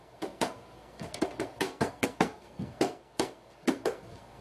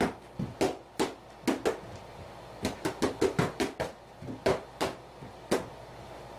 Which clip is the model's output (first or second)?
first